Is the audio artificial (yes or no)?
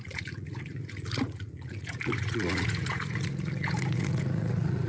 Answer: yes